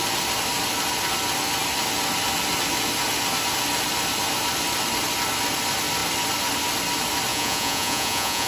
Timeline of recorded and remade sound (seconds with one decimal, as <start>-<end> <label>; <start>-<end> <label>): 0.0-7.3 recorded; 7.3-8.5 remade